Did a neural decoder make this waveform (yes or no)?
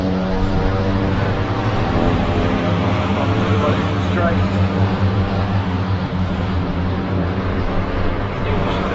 yes